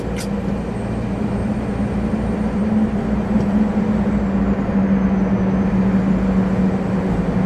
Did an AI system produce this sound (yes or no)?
no